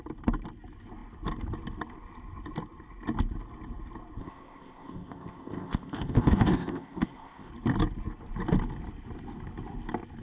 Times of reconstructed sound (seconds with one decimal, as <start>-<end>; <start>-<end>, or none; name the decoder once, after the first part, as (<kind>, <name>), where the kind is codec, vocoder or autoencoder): 4.2-7.5 (codec, ZipCodec)